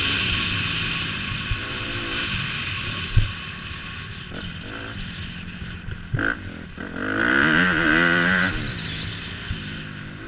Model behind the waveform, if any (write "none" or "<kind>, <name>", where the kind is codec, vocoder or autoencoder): none